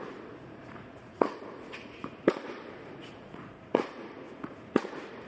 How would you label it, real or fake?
fake